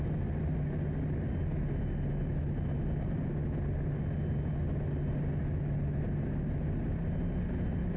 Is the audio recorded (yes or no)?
yes